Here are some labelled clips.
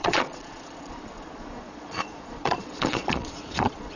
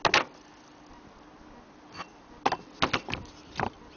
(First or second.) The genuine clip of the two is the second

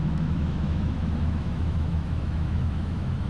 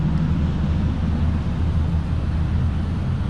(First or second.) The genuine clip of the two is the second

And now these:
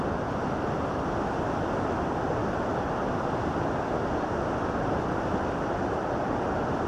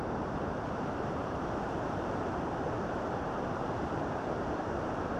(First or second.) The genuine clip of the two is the first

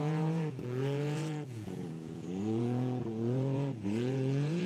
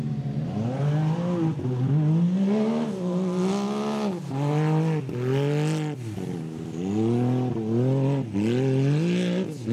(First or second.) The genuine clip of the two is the second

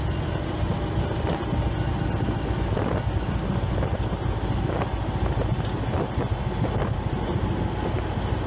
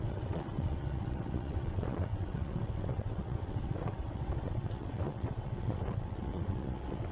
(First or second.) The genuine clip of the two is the first